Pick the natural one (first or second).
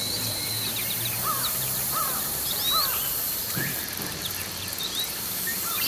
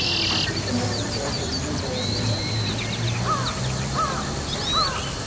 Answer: second